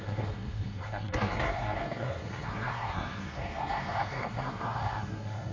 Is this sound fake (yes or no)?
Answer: yes